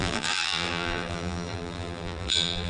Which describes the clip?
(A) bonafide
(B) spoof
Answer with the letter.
B